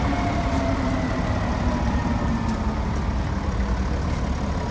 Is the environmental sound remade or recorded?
recorded